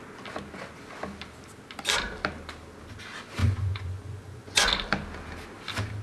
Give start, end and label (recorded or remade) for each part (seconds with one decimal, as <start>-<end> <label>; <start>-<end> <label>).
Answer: 0.0-3.4 recorded; 3.4-4.7 remade; 4.7-6.0 recorded